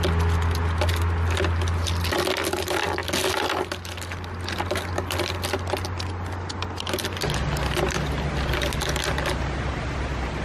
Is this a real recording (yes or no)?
yes